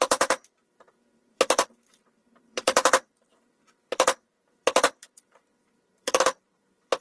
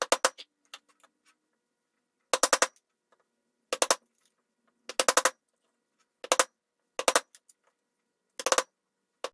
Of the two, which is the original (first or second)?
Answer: second